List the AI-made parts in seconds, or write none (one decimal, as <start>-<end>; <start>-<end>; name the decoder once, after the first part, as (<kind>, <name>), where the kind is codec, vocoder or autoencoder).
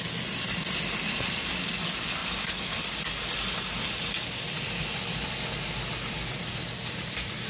none